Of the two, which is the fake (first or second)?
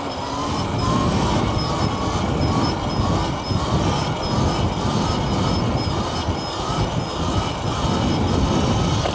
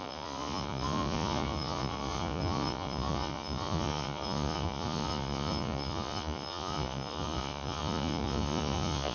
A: second